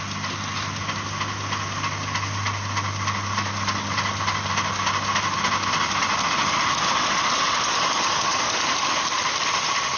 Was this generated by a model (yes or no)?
no